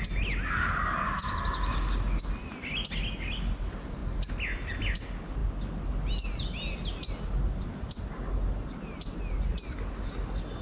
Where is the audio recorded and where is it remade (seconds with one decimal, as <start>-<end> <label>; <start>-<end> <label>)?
0.0-1.7 recorded; 1.7-2.2 remade; 2.2-10.6 recorded